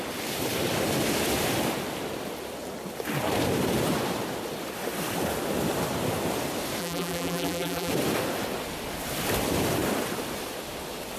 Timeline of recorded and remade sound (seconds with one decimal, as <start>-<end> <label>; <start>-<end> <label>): 0.0-6.8 recorded; 6.8-7.9 remade; 7.9-11.2 recorded